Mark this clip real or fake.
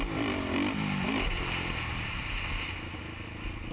real